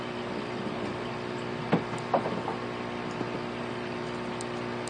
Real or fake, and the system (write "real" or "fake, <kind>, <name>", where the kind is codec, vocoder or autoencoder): real